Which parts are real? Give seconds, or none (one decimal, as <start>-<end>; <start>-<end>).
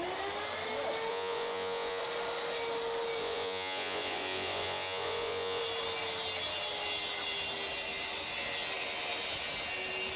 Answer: 0.0-1.1; 2.0-3.2; 5.6-10.2